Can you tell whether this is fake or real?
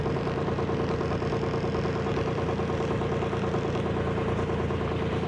real